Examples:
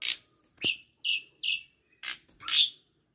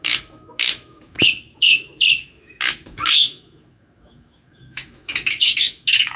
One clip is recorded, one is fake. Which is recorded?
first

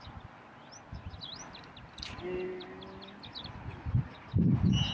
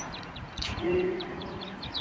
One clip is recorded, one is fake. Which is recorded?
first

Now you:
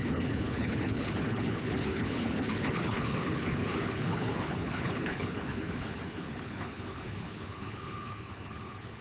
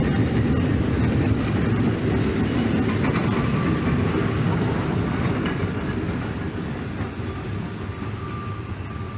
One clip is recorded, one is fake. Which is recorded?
second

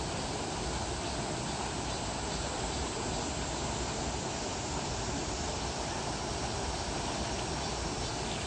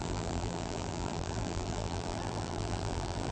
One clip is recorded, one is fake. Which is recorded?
first